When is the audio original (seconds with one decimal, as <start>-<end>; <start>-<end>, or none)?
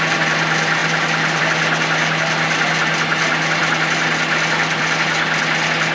0.0-5.9